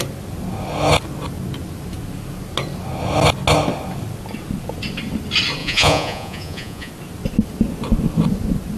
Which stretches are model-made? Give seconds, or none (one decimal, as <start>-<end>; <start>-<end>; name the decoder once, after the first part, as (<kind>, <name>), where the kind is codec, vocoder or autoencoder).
5.6-6.9 (vocoder, Vocos)